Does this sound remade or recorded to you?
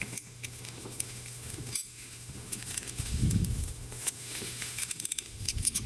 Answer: remade